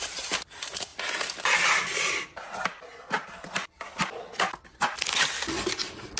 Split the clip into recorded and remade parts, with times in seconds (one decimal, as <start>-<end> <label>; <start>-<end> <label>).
0.0-0.9 recorded; 0.9-4.6 remade; 4.6-6.2 recorded